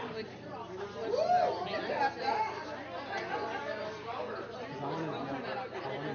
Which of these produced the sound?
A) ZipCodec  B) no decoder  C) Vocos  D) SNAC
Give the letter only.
B